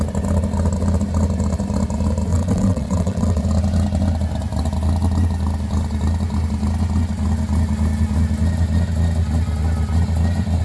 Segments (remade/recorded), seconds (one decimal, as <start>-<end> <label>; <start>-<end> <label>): 0.0-2.3 recorded; 2.3-3.4 remade; 3.4-10.6 recorded